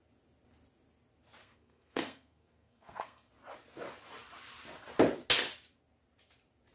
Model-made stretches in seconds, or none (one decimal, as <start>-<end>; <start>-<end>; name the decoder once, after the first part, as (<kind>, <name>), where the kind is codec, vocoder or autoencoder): 1.4-3.3 (codec, SNAC)